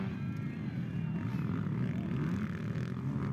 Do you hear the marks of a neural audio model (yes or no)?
no